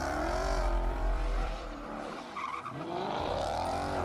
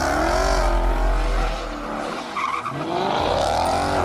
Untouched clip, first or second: second